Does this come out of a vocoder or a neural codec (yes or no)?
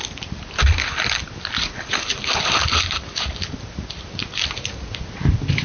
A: no